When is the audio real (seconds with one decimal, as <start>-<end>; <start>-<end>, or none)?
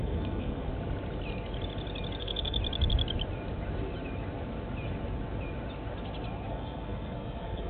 0.7-2.2; 2.6-6.5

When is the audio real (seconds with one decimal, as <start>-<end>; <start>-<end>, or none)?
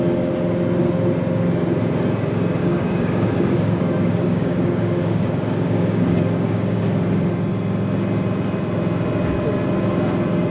0.0-2.6; 6.8-10.5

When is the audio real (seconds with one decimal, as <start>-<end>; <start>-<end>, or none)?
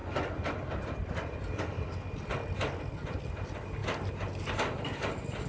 0.0-5.5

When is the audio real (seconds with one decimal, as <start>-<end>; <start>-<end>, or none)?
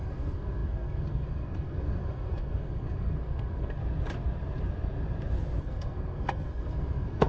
3.8-5.6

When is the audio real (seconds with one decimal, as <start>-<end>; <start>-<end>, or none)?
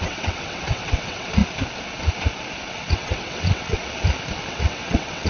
1.4-2.9; 3.8-4.5